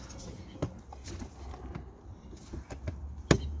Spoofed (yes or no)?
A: no